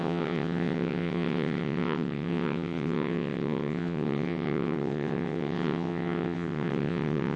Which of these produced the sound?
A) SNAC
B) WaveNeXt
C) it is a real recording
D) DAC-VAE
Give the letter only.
B